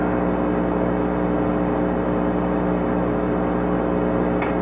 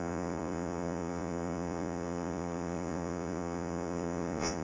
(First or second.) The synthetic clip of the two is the second